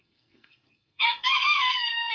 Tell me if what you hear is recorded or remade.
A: remade